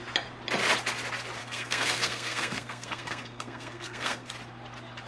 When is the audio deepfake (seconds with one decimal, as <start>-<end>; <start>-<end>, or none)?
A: 1.4-4.3